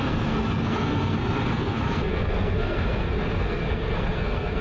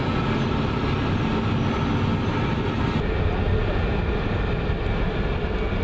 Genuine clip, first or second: second